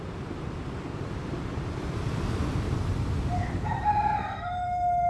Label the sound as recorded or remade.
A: recorded